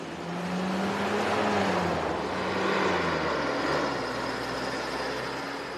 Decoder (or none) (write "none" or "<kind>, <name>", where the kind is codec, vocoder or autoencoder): none